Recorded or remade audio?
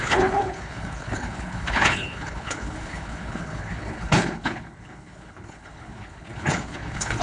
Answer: remade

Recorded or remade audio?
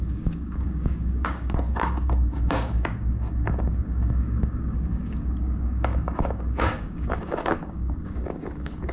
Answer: remade